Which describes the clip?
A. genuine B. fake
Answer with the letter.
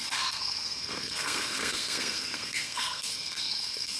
B